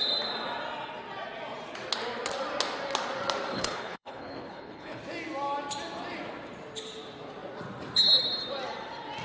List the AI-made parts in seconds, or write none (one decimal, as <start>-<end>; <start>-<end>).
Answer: 3.5-5.0